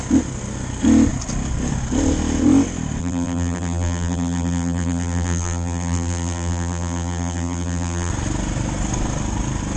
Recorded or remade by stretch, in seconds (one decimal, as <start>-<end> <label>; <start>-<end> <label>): 0.0-3.0 recorded; 3.0-8.1 remade; 8.1-9.8 recorded